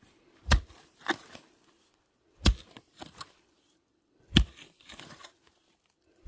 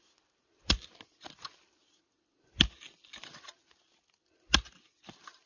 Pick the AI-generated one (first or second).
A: first